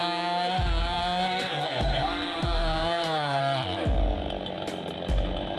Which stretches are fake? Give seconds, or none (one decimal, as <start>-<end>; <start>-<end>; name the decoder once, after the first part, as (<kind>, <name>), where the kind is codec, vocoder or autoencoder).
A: 0.0-3.4 (codec, SNAC)